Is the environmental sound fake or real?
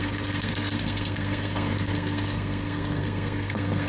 fake